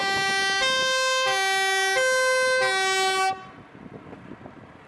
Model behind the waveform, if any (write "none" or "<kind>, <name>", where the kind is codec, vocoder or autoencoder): none